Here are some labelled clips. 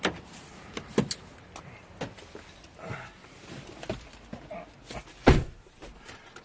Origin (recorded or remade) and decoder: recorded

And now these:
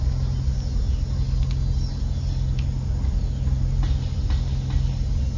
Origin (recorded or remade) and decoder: recorded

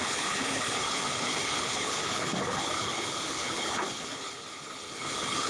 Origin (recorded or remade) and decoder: remade, codec, HILCodec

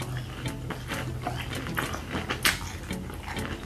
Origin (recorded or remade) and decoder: recorded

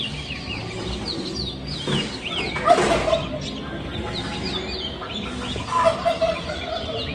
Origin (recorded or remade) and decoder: recorded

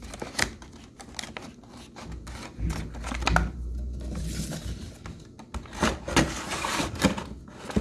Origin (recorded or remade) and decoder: recorded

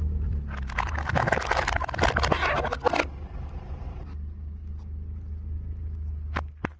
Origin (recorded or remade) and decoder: recorded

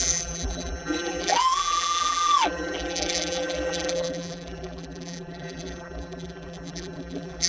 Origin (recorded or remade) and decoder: remade, vocoder, BigVGAN v2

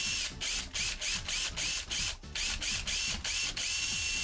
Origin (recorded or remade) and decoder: recorded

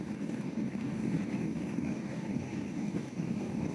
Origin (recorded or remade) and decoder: remade, codec, DAC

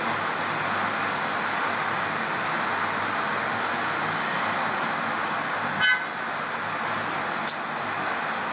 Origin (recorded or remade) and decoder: recorded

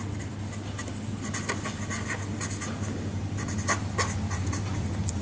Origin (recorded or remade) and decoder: recorded